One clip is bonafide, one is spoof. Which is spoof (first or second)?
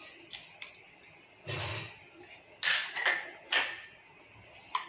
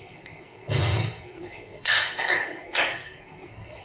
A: second